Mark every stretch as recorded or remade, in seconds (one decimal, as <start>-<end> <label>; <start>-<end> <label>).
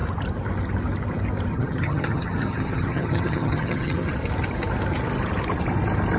0.0-1.5 recorded; 1.5-4.1 remade; 4.1-6.2 recorded